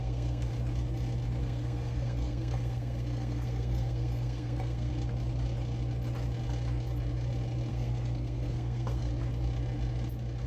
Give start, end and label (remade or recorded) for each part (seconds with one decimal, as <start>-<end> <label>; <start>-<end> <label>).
0.0-0.5 remade; 0.5-1.4 recorded; 1.4-4.9 remade; 4.9-7.7 recorded; 7.7-9.1 remade; 9.1-10.5 recorded